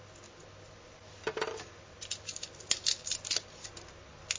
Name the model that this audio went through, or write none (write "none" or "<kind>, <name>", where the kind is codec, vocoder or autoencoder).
none